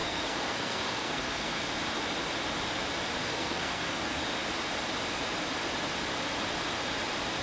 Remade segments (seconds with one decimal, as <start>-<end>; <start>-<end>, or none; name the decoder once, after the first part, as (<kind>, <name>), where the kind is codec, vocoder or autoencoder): 0.0-1.7 (codec, SNAC); 3.2-4.2